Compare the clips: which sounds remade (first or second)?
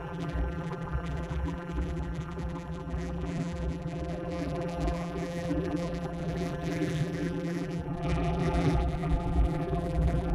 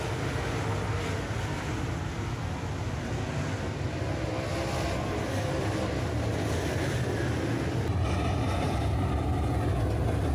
first